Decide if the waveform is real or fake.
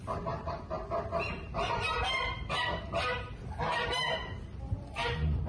real